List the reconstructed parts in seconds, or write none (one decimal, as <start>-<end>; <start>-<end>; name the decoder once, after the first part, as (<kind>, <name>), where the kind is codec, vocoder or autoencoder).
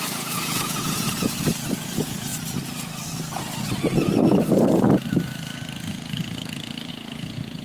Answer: 0.0-2.3 (vocoder, Vocos); 6.9-7.6